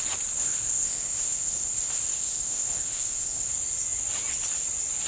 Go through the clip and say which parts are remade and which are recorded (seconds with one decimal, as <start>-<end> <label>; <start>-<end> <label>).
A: 0.0-0.4 recorded; 0.4-3.5 remade; 3.5-5.1 recorded